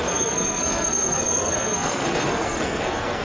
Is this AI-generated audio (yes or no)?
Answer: yes